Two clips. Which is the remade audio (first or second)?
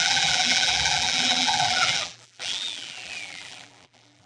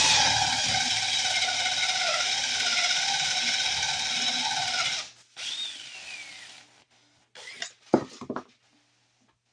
first